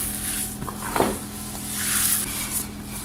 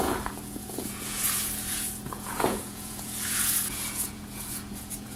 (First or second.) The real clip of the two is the first